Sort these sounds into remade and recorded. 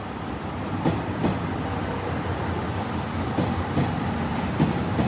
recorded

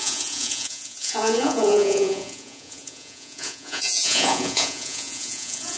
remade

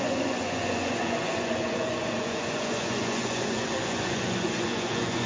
remade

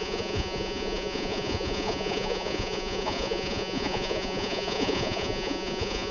remade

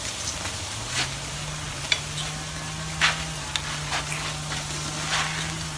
recorded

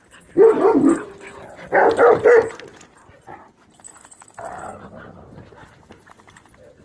recorded